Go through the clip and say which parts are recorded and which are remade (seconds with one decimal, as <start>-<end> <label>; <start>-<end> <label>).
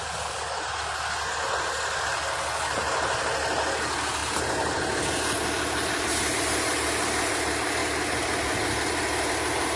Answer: 0.0-7.8 recorded; 7.8-9.8 remade